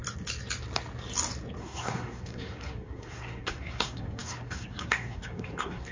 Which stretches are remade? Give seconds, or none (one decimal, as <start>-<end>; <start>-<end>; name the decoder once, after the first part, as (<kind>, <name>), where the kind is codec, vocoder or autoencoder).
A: 1.6-5.9 (codec, SNAC)